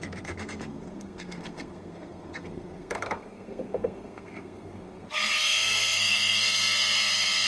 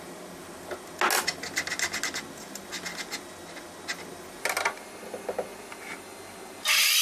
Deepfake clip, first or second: first